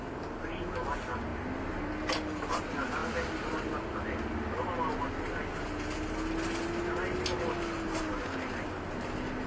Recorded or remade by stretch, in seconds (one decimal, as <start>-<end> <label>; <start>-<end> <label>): 0.0-9.5 recorded